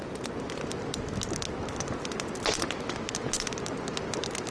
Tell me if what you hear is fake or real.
real